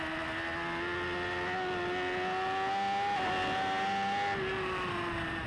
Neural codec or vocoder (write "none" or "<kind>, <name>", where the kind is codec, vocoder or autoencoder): none